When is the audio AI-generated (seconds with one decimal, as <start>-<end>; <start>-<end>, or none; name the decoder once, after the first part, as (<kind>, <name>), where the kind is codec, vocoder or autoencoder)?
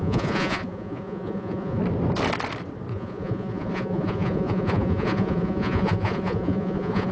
0.0-1.8 (vocoder, Vocos); 2.9-7.1